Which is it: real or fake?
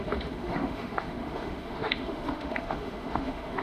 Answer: fake